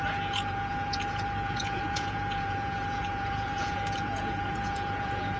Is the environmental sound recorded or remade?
remade